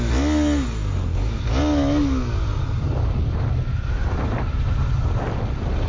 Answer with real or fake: real